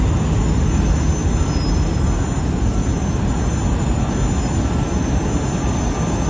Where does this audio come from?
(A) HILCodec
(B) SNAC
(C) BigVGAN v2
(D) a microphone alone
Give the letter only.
D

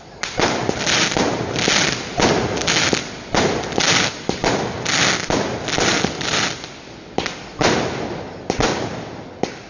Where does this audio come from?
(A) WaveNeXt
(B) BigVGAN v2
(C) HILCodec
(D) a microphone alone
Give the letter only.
D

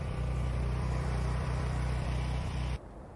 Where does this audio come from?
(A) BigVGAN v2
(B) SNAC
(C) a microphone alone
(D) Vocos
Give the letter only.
A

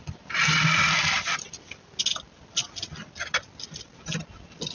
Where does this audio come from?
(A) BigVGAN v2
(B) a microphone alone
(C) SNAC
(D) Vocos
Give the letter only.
B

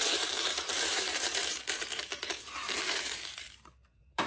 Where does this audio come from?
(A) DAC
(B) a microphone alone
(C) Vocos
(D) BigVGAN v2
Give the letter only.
D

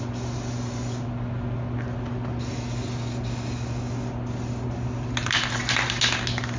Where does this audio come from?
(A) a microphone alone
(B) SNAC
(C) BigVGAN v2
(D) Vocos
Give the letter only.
A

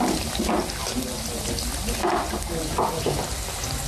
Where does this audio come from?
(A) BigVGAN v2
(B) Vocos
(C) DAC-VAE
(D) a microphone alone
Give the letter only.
D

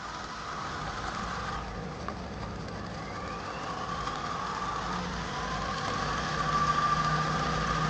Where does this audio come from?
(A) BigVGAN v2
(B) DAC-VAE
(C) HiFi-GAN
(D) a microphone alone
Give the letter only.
D